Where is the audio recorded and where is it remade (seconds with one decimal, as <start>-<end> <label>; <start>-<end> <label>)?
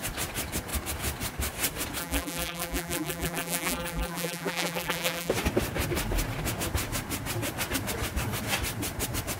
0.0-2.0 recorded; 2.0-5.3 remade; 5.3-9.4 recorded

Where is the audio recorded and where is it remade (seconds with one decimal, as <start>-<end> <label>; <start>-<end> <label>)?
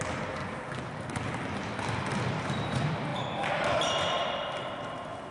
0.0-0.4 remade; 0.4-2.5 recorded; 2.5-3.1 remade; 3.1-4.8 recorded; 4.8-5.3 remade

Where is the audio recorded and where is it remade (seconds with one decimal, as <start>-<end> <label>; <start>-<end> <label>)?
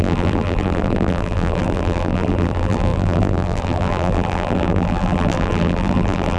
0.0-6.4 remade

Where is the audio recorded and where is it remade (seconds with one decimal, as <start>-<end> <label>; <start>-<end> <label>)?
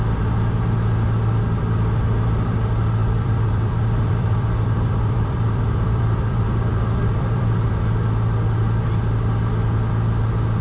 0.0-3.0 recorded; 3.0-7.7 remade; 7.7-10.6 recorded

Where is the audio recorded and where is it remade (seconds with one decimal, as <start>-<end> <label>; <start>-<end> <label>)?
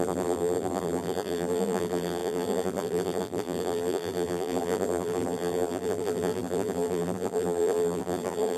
0.0-8.6 remade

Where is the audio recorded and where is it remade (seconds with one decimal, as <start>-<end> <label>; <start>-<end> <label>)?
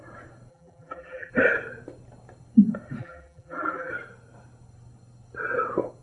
0.0-0.5 recorded; 0.5-1.3 remade; 1.3-3.0 recorded; 3.0-3.9 remade; 3.9-6.0 recorded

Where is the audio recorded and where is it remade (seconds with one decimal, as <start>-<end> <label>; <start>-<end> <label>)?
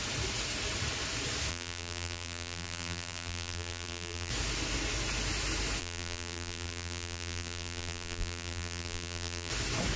0.0-1.5 recorded; 1.5-4.3 remade; 4.3-5.8 recorded; 5.8-9.5 remade; 9.5-10.0 recorded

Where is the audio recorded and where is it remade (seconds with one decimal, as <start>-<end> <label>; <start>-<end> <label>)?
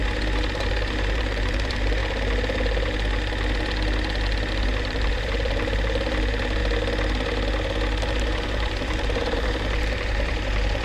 0.0-0.7 recorded; 0.7-2.0 remade; 2.0-4.5 recorded; 4.5-6.6 remade; 6.6-8.1 recorded; 8.1-10.8 remade